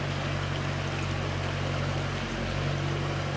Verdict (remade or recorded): recorded